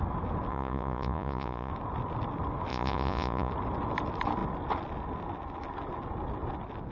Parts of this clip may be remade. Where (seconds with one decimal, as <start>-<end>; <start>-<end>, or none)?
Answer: 0.5-1.7; 2.7-3.5